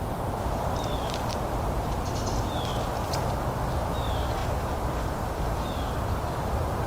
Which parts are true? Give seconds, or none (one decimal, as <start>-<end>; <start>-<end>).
2.7-3.9